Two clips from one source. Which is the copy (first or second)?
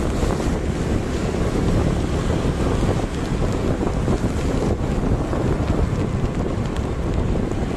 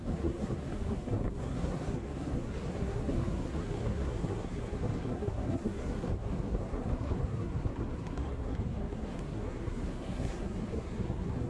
second